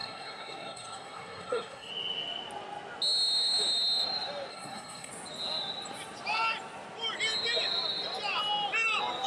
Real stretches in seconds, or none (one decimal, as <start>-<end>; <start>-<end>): 1.9-4.5; 5.1-9.3